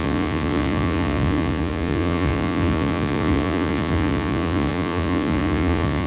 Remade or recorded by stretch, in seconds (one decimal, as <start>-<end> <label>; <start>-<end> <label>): 0.0-6.1 remade